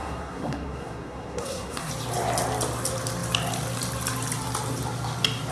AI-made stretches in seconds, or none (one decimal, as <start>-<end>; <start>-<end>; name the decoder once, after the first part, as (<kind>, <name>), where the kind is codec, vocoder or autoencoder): 0.0-1.9 (codec, SNAC)